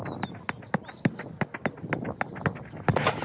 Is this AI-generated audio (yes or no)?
no